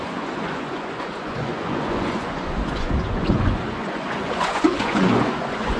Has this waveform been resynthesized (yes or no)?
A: yes